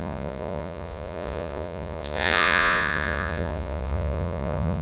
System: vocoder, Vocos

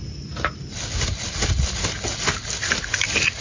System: none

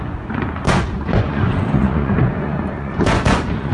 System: vocoder, Vocos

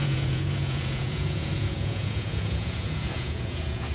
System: vocoder, Vocos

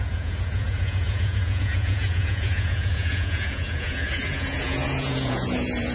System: vocoder, Vocos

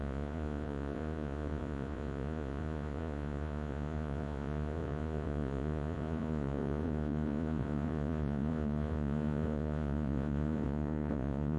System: vocoder, Vocos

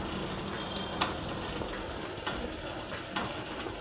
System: none